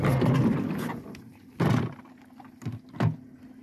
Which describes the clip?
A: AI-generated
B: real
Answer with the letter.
B